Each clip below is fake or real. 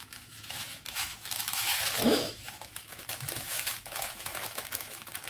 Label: fake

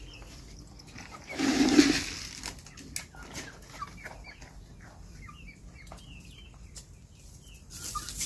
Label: real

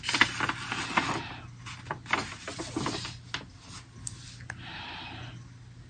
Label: real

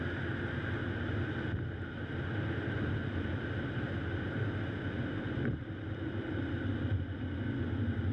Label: real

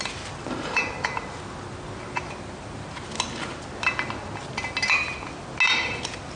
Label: real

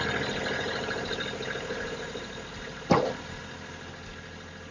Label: real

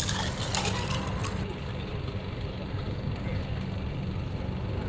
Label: real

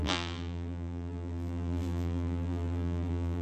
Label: fake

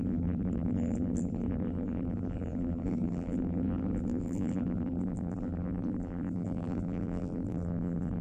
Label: fake